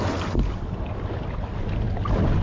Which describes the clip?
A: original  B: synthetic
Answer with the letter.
A